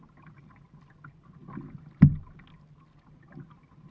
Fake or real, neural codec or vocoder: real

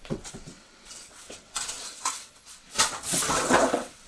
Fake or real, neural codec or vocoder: fake, vocoder, WaveNeXt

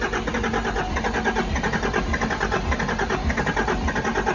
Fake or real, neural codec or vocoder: real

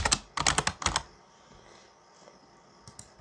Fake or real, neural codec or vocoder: real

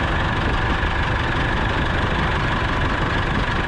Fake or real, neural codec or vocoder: real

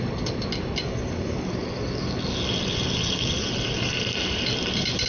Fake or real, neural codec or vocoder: real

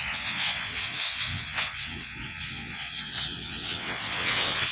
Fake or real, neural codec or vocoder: fake, vocoder, WaveNeXt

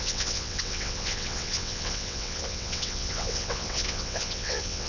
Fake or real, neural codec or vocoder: fake, vocoder, WaveNeXt